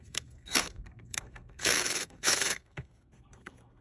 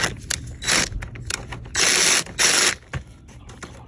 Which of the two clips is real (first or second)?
second